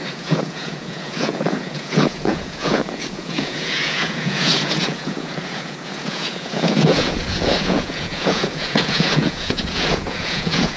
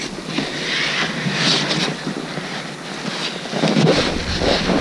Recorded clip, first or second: second